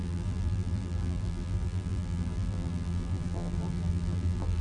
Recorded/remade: remade